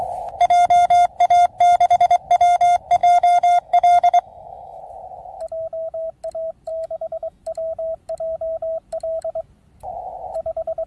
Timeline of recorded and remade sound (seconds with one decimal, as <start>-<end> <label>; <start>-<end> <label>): 0.0-3.0 recorded; 3.0-4.8 remade; 4.8-6.7 recorded; 6.7-7.4 remade; 7.4-10.9 recorded